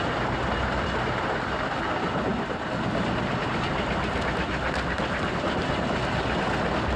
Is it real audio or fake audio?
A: real